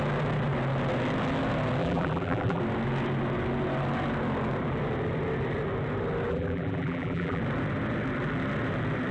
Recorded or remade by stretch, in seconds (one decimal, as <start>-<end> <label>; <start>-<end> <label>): 0.0-1.8 recorded; 1.8-2.6 remade; 2.6-6.3 recorded; 6.3-7.4 remade; 7.4-9.1 recorded